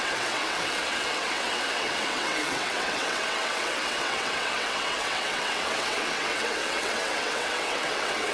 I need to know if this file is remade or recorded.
remade